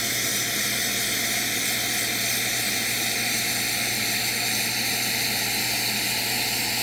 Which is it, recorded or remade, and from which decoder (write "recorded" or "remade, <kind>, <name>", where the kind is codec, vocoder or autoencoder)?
recorded